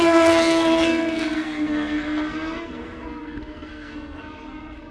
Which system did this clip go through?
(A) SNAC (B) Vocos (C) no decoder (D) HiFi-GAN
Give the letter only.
A